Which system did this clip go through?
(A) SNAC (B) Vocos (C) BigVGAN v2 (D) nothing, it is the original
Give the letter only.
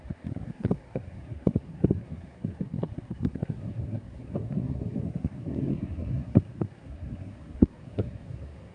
A